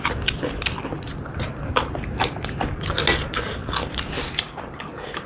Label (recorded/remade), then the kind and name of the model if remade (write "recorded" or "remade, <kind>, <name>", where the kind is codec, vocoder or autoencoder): recorded